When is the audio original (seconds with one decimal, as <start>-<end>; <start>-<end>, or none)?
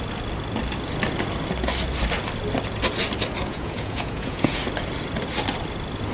0.0-3.4; 4.6-6.1